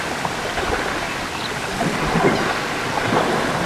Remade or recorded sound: recorded